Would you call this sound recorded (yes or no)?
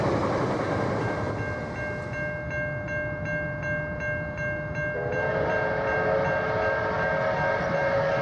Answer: yes